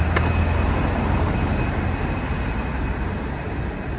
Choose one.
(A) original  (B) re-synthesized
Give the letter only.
A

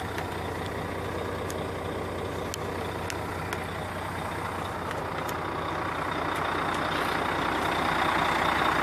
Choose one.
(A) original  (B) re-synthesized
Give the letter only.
A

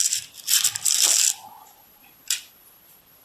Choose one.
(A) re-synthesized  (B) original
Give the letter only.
B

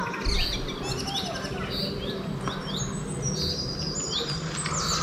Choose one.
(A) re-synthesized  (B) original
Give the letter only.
B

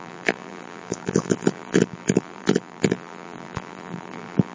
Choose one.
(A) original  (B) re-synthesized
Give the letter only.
B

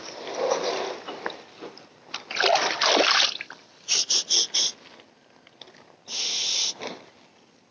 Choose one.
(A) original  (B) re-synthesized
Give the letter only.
A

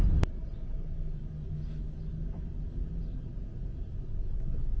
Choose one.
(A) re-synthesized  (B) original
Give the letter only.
B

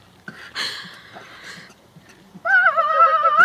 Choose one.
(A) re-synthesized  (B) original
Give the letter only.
A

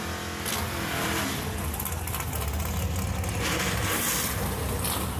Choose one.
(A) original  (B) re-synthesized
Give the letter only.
A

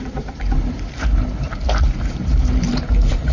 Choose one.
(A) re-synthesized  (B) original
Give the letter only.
A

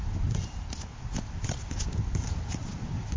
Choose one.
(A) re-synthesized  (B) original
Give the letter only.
B